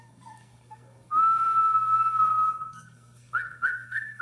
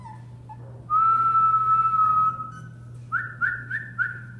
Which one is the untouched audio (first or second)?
second